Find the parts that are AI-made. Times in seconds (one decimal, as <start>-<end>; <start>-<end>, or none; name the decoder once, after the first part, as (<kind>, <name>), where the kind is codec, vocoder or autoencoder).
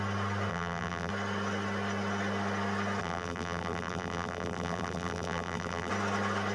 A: 0.5-1.1 (vocoder, BigVGAN v2); 3.0-5.9